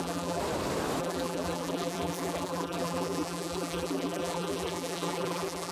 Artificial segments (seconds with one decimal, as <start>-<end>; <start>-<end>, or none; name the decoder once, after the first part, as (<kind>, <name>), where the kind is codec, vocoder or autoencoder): 0.0-0.4 (vocoder, BigVGAN v2); 1.0-5.7